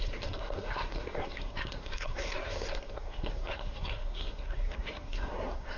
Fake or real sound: fake